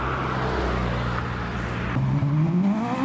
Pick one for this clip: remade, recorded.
recorded